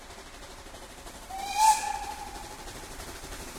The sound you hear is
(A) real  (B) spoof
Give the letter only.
B